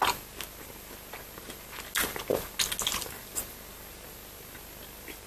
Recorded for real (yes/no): yes